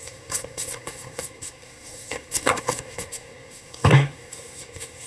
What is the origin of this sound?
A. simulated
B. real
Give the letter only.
A